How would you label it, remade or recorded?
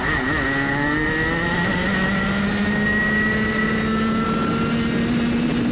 recorded